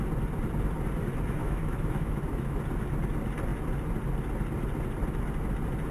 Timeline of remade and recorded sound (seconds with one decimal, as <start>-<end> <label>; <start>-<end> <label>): 0.0-1.4 recorded; 1.4-2.6 remade; 2.6-5.9 recorded